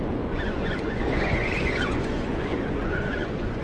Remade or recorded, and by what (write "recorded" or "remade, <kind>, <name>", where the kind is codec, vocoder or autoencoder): remade, vocoder, Vocos